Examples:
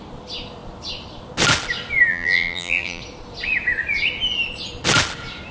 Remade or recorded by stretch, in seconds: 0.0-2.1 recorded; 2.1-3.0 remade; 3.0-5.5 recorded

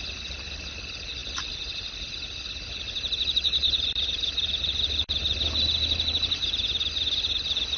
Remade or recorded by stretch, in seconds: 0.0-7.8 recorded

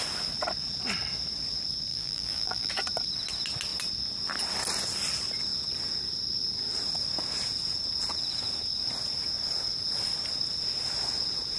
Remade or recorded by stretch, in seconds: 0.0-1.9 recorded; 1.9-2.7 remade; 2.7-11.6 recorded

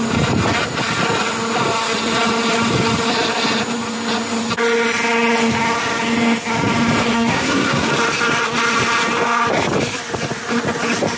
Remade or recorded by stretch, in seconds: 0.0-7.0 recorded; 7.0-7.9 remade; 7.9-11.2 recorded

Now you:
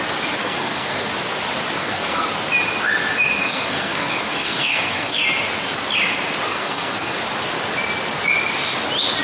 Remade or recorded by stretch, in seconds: 0.0-0.4 recorded; 0.4-1.1 remade; 1.1-1.8 recorded; 1.8-2.3 remade; 2.3-3.4 recorded; 3.4-5.2 remade; 5.2-6.5 recorded; 6.5-7.2 remade; 7.2-9.2 recorded